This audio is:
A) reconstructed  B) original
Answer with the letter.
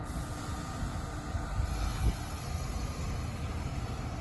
B